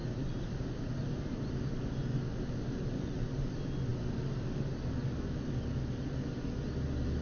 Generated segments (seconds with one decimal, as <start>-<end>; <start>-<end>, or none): none